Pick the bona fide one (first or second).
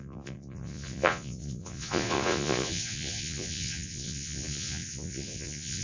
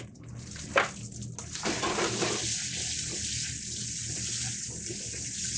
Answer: second